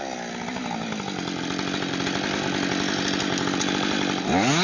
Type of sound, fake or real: real